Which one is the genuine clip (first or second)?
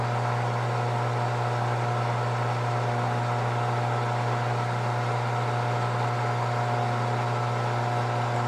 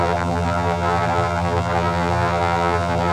first